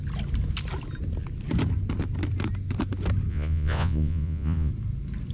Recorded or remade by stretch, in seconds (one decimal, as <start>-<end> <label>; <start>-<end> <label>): 0.0-3.3 recorded; 3.3-4.7 remade; 4.7-5.3 recorded